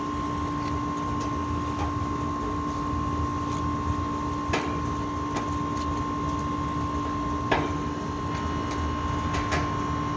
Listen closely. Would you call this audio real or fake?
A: real